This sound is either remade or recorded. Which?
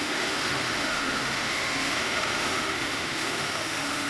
remade